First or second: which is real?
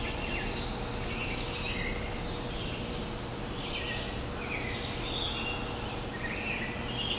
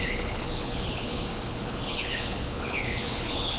first